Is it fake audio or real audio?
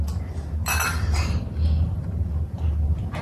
real